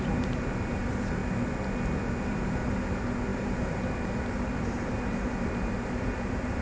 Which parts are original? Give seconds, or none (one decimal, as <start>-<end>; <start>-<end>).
1.2-2.2